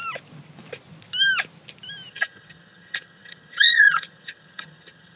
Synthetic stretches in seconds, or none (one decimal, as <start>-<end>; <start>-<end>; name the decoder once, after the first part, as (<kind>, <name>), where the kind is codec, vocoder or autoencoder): 2.1-5.2 (vocoder, HiFi-GAN)